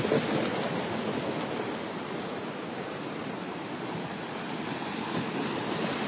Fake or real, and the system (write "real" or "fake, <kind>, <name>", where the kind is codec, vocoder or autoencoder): real